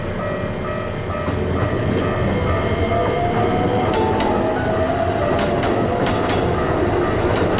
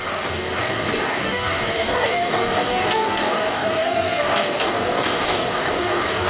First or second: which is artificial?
second